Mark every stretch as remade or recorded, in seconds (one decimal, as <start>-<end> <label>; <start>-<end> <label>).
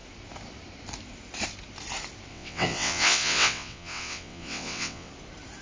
0.0-2.3 recorded; 2.3-5.1 remade; 5.1-5.6 recorded